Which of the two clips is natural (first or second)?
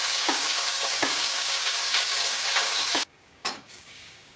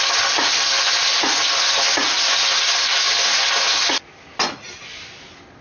second